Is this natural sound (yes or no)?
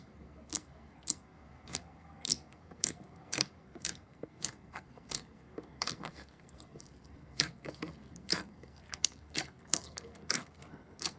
no